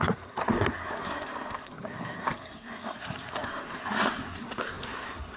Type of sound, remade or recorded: remade